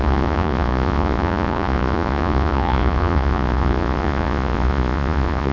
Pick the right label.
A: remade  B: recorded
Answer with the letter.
A